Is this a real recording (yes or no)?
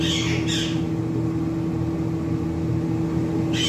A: yes